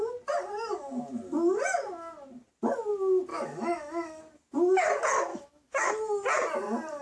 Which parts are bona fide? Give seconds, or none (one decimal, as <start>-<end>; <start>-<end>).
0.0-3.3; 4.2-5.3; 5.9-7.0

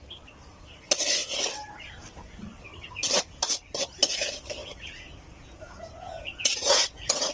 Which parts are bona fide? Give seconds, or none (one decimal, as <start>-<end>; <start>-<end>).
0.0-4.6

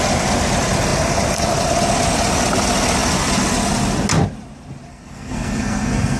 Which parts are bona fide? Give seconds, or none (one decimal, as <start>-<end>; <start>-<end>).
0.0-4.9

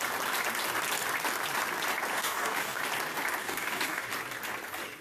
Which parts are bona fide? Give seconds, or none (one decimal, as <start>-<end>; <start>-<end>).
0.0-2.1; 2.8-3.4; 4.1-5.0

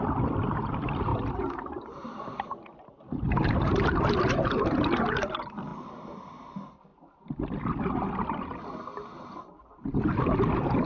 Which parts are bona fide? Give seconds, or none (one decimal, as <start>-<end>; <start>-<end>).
0.0-1.1; 2.2-5.7; 6.4-10.9

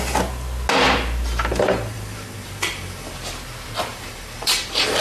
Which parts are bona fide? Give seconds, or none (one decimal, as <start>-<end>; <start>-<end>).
0.0-1.5; 3.3-3.9